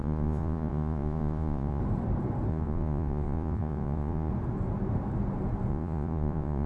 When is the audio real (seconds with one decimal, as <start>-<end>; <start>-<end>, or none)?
1.8-2.5; 4.3-5.7